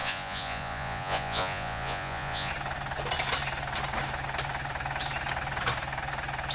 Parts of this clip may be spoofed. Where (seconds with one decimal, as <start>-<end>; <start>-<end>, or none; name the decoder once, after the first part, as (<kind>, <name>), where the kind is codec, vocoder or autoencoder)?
0.0-2.5 (vocoder, Vocos)